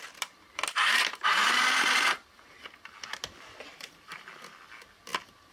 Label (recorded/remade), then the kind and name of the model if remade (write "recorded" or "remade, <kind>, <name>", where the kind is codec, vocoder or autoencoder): recorded